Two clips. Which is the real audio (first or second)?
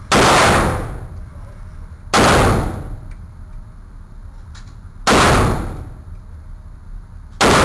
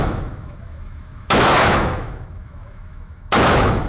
first